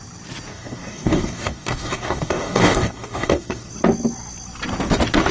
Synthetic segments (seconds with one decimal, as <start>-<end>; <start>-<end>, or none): 0.5-3.7